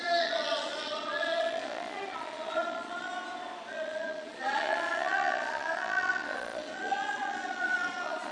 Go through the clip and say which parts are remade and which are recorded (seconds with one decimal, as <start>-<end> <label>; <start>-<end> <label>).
0.0-3.1 remade; 3.1-3.7 recorded; 3.7-8.3 remade